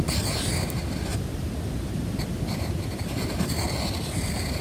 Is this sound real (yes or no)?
yes